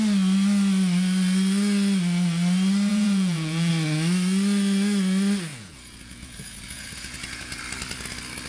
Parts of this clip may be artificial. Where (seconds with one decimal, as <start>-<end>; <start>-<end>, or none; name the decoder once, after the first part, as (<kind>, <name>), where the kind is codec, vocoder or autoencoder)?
2.9-3.7 (vocoder, Vocos); 5.5-7.6